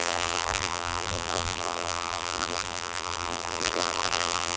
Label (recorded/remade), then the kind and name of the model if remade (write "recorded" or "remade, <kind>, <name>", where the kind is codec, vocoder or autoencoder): remade, vocoder, BigVGAN v2